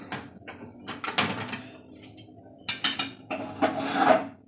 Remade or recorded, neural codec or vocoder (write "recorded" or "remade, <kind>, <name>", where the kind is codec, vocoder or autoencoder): recorded